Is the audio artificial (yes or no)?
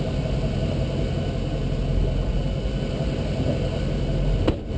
no